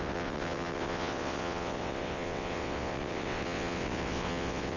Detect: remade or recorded remade